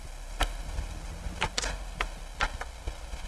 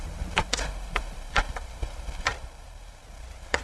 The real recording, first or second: first